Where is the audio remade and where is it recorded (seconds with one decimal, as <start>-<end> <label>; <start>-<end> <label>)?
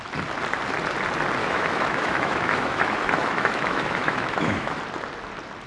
0.0-1.4 recorded; 1.4-4.8 remade; 4.8-5.7 recorded